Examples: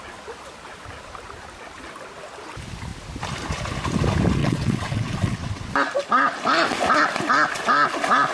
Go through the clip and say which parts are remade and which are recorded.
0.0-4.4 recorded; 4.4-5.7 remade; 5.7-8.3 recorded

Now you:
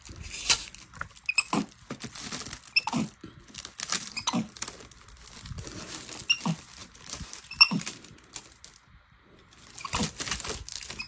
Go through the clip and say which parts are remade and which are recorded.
0.0-6.8 recorded; 6.8-8.3 remade; 8.3-11.1 recorded